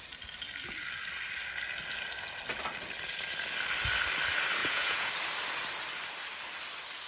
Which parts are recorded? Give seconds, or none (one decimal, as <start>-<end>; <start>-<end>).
0.0-4.6; 5.1-7.1